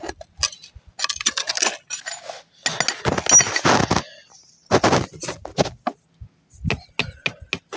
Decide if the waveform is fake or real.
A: real